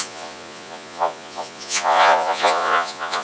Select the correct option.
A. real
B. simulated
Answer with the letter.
B